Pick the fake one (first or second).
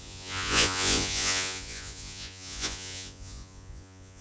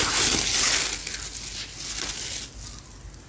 first